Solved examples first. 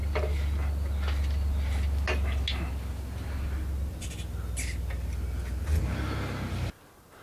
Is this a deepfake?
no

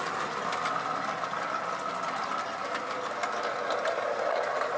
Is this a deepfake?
no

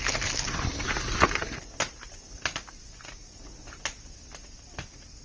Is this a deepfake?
no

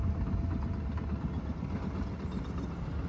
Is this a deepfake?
no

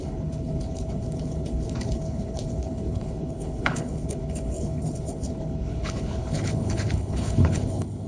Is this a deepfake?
yes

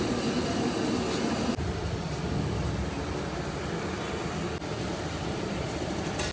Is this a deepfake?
no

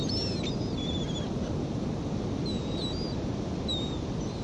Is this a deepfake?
no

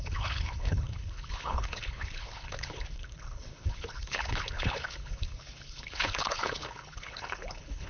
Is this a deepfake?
yes